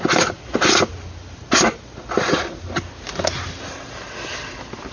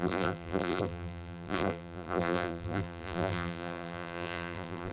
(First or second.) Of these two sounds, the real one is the first